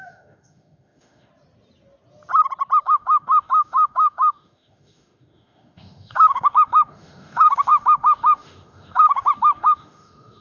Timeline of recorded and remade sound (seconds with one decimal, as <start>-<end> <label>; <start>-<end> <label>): 0.0-1.3 remade; 1.3-2.8 recorded; 2.8-10.4 remade